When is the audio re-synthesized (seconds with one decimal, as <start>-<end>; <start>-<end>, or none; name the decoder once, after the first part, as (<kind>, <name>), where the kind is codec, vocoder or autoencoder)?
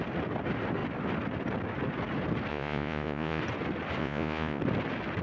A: 2.5-3.4 (vocoder, Vocos); 4.0-4.6